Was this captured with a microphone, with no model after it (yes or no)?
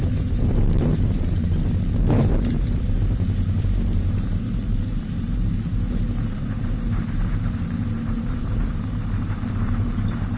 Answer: no